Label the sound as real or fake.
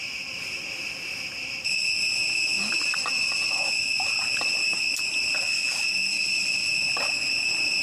real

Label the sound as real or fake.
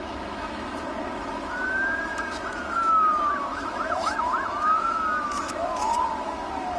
fake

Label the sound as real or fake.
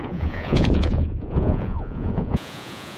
fake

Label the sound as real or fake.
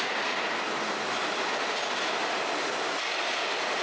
real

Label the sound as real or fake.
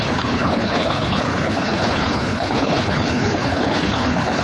fake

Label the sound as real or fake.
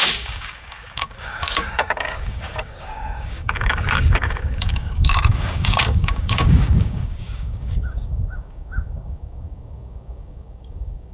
fake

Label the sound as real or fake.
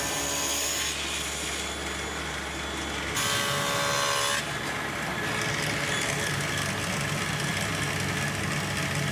real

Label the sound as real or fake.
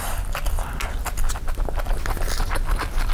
real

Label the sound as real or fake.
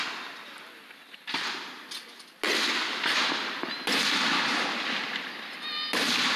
real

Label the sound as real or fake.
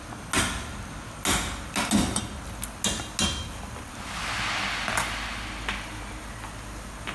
real